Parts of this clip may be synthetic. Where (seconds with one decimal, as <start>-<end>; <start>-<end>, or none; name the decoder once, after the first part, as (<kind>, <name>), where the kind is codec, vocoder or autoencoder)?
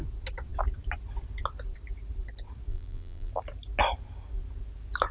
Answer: 2.7-3.3 (vocoder, BigVGAN v2)